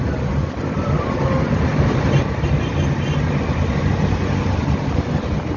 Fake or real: real